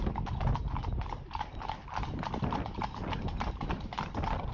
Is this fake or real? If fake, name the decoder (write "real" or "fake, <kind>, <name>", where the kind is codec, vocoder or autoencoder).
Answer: real